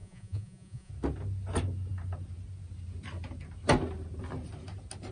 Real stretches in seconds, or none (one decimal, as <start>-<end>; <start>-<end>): 0.9-5.1